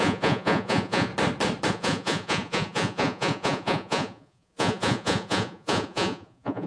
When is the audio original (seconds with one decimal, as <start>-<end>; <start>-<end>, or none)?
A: 1.1-1.7